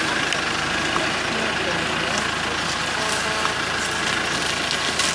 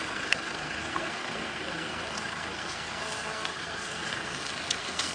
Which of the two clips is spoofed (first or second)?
second